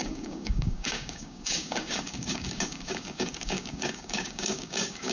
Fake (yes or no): yes